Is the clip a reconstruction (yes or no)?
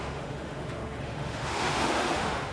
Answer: yes